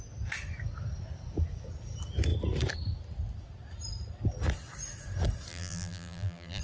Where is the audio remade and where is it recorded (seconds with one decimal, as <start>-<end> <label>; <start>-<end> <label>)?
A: 0.0-5.5 recorded; 5.5-6.6 remade